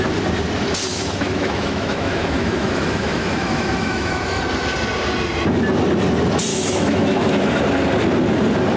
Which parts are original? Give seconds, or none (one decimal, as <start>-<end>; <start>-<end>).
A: 0.0-0.9; 4.4-6.5; 7.6-8.8